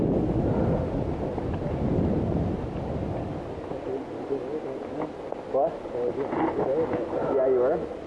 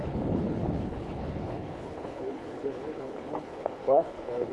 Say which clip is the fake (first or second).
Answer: second